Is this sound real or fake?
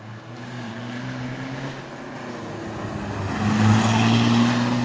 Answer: real